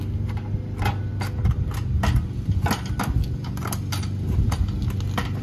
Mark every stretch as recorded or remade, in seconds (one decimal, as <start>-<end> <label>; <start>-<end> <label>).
0.0-5.4 recorded